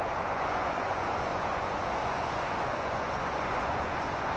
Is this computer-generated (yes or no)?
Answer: yes